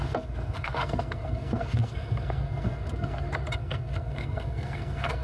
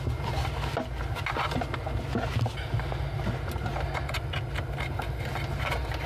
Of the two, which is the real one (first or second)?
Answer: second